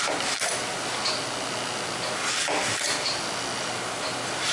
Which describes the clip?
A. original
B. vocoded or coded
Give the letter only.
A